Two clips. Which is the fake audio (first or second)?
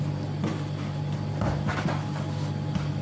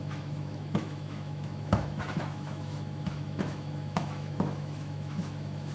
second